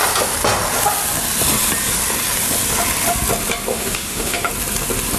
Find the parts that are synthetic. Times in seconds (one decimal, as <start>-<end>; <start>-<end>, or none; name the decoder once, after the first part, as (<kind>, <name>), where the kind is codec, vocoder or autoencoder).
3.7-4.5 (autoencoder, DAC-VAE)